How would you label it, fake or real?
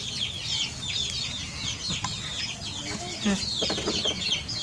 real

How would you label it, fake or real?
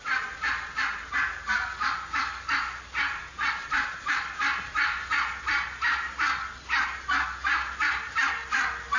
fake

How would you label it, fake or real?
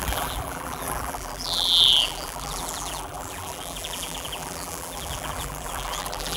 fake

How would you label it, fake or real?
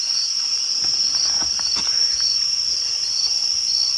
fake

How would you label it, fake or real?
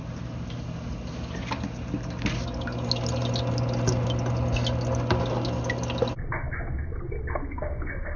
real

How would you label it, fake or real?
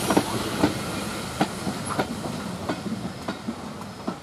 real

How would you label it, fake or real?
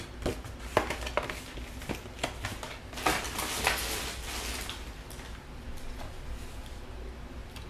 real